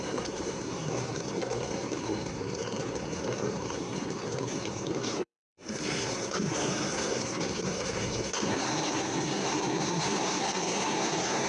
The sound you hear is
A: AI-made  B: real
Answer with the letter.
A